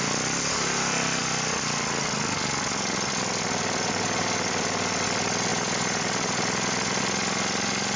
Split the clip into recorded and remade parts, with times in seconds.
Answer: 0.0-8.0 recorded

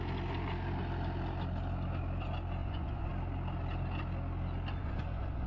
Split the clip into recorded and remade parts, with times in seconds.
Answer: 0.0-2.6 recorded; 2.6-3.1 remade; 3.1-4.8 recorded; 4.8-5.5 remade

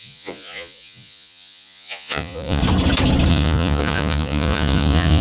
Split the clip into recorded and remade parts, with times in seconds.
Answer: 0.0-2.6 remade; 2.6-3.3 recorded; 3.3-5.2 remade

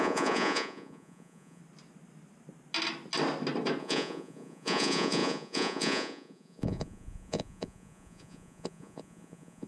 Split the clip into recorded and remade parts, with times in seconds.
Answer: 0.0-1.6 remade; 1.6-3.8 recorded; 3.8-9.7 remade